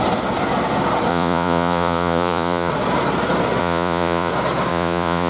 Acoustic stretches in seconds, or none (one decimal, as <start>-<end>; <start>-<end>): 0.0-1.1; 2.7-3.6; 4.3-4.7